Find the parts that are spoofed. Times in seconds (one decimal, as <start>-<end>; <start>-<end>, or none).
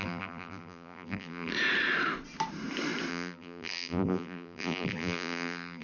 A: 0.0-1.5; 3.1-5.8